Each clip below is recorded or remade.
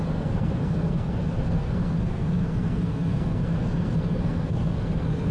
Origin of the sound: remade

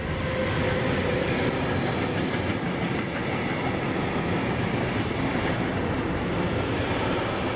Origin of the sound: recorded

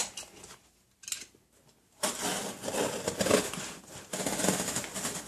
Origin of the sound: recorded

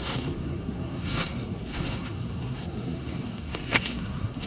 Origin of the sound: remade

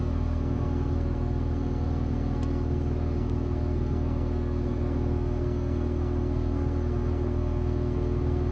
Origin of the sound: remade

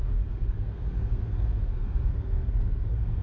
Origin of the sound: remade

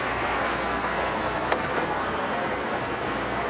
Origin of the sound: remade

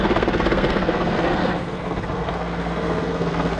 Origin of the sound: remade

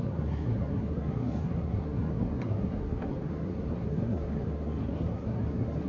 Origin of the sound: remade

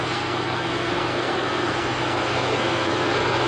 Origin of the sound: remade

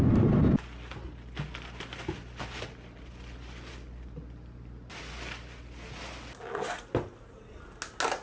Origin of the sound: recorded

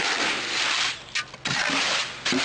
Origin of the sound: recorded